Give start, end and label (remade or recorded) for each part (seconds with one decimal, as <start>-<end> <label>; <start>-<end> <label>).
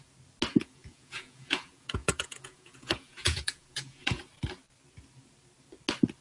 0.0-0.5 recorded; 0.5-4.2 remade; 4.2-6.2 recorded